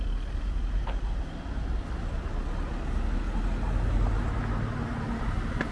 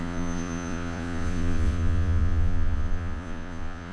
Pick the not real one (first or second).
second